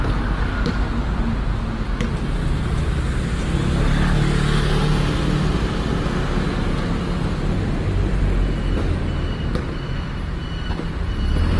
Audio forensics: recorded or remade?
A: recorded